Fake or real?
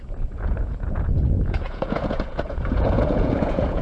fake